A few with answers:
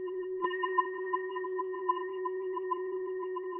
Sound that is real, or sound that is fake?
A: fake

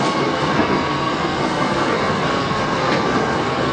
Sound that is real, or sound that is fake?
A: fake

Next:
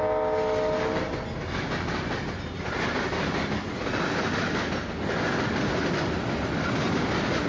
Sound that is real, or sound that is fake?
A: real